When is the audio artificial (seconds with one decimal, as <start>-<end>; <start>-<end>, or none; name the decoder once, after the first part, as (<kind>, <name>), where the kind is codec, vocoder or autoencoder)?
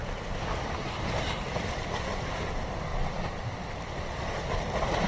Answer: none